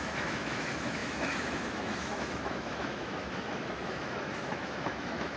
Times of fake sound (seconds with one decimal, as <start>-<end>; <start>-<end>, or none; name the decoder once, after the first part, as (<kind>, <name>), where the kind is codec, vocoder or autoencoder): 0.0-5.4 (autoencoder, DAC-VAE)